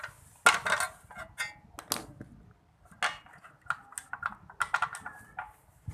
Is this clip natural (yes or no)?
yes